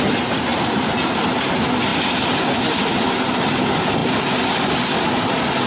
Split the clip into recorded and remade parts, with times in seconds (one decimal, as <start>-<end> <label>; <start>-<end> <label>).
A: 0.0-5.7 recorded